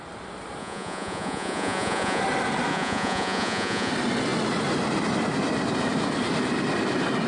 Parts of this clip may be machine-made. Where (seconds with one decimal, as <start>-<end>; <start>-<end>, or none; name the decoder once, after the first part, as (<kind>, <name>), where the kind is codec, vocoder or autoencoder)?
0.6-2.2 (vocoder, Vocos); 2.7-3.9